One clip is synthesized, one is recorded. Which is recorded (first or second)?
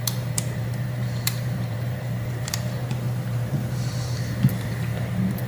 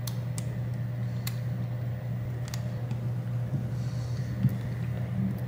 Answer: second